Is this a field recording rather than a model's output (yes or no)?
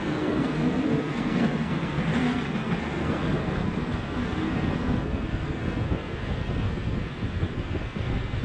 no